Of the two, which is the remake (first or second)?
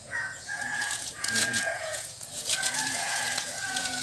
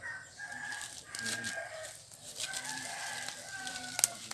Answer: first